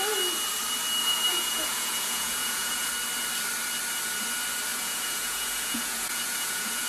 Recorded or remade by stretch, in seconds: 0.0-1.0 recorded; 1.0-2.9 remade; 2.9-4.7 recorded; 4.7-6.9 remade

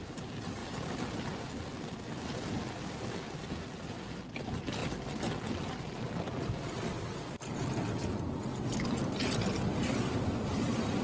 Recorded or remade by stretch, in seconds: 0.0-11.0 recorded

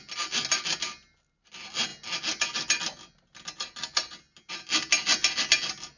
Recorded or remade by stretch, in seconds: 0.0-6.0 recorded

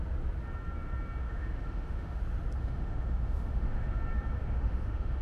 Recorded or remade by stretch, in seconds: 0.0-1.2 recorded; 1.2-2.2 remade; 2.2-2.6 recorded; 2.6-4.0 remade; 4.0-4.4 recorded; 4.4-5.2 remade

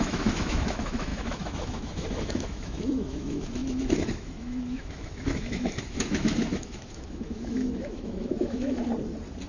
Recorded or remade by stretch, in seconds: 0.0-8.8 remade; 8.8-9.5 recorded